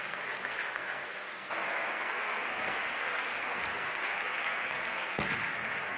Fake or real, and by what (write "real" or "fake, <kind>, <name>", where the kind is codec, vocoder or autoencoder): fake, codec, SNAC